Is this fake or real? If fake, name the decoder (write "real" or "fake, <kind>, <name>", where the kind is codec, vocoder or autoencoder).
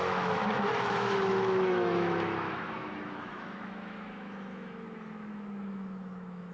fake, autoencoder, DAC-VAE